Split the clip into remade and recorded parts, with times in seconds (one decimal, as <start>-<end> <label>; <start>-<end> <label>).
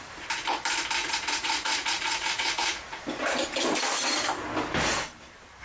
0.0-1.0 recorded; 1.0-3.0 remade; 3.0-5.6 recorded